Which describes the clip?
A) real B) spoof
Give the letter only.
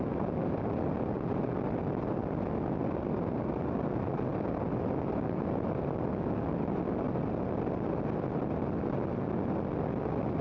A